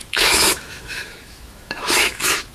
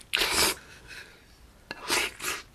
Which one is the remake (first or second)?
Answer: first